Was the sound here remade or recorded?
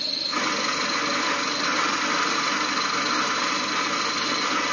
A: recorded